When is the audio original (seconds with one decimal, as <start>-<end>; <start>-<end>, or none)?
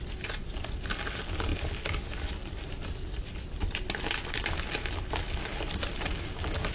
0.0-6.7